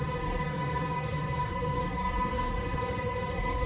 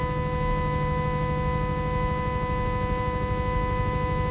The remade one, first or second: first